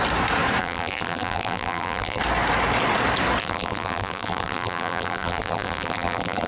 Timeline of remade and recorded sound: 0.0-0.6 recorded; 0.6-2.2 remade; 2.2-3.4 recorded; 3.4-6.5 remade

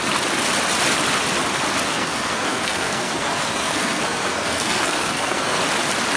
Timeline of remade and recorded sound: 0.0-1.9 recorded; 1.9-5.6 remade; 5.6-6.2 recorded

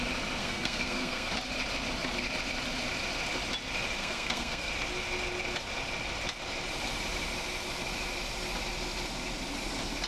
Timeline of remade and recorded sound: 0.0-0.4 recorded; 0.4-1.3 remade; 1.3-4.0 recorded; 4.0-4.7 remade; 4.7-10.1 recorded

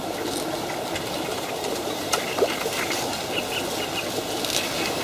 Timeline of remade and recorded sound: 0.0-1.3 recorded; 1.3-3.6 remade; 3.6-5.0 recorded

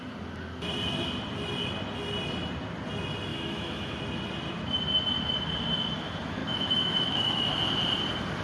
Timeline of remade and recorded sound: 0.0-3.3 recorded; 3.3-4.0 remade; 4.0-6.4 recorded; 6.4-7.5 remade; 7.5-8.4 recorded

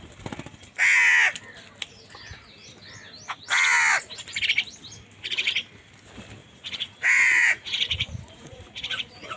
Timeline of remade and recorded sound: 0.0-6.4 recorded; 6.4-9.4 remade

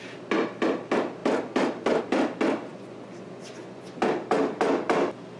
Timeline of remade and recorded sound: 0.0-2.7 recorded; 2.7-4.0 remade; 4.0-5.4 recorded